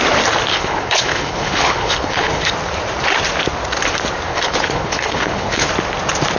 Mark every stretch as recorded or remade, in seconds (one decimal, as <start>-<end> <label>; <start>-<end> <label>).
0.0-0.5 recorded; 0.5-2.5 remade; 2.5-4.3 recorded; 4.3-5.7 remade; 5.7-6.4 recorded